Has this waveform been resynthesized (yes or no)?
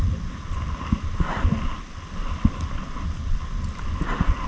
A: no